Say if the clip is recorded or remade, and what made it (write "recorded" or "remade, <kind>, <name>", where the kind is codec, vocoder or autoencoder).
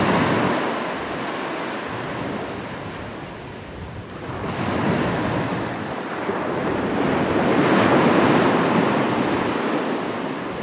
recorded